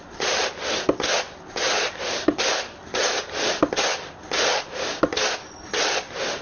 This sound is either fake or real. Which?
real